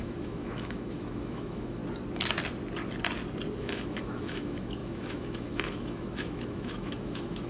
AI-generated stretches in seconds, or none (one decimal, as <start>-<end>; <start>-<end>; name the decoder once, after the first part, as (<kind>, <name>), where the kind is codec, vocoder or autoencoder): 0.0-1.8 (autoencoder, DAC-VAE); 3.6-7.5